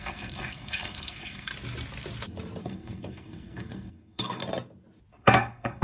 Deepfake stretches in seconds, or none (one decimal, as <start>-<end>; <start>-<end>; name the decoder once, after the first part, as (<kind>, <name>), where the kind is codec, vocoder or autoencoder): 0.0-1.5 (codec, SNAC); 2.6-4.4; 5.1-5.8